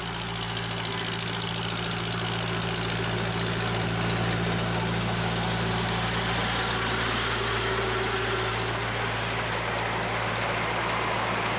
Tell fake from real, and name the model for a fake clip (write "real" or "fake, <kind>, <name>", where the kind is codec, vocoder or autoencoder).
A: real